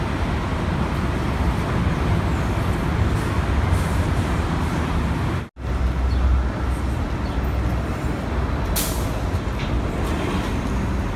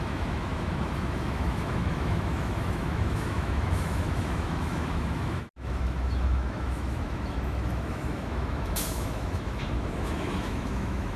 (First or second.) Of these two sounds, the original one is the first